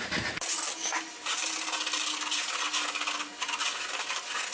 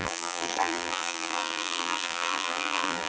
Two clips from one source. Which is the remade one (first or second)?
second